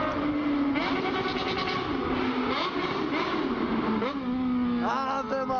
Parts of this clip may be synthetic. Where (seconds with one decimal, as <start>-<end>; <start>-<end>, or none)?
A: none